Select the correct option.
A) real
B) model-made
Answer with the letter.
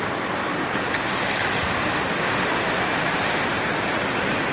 A